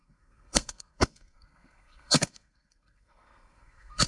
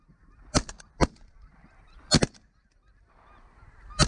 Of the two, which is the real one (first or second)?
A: second